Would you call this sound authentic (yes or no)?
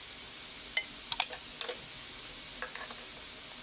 yes